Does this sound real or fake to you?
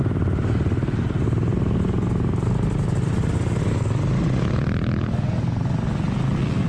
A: real